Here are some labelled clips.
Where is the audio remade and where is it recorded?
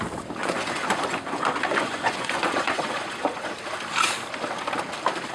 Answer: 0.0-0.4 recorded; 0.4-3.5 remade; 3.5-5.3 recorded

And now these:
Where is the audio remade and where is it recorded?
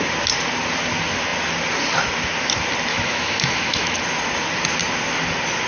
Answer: 0.0-2.9 recorded; 2.9-4.0 remade; 4.0-5.7 recorded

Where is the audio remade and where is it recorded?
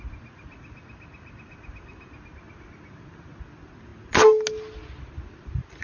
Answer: 0.0-5.8 recorded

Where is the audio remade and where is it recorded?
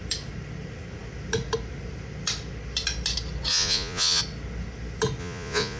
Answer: 0.0-3.5 recorded; 3.5-4.2 remade; 4.2-5.2 recorded; 5.2-5.8 remade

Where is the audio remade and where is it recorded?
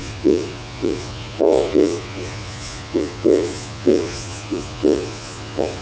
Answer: 0.0-5.8 remade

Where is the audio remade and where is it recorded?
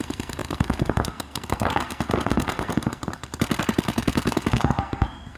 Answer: 0.0-5.4 remade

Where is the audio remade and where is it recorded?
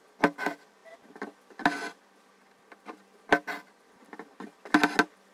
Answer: 0.0-5.3 recorded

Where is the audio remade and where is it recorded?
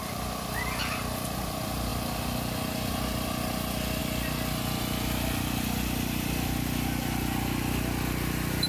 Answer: 0.0-8.7 recorded